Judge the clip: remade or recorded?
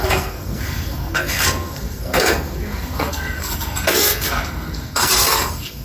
remade